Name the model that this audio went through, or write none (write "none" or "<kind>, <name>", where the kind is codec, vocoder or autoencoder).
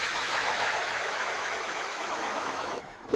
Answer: autoencoder, DAC-VAE